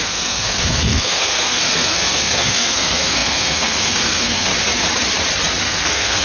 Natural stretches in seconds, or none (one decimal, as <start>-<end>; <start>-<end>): 4.5-5.6